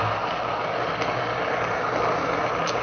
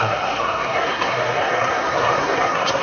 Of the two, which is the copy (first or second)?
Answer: second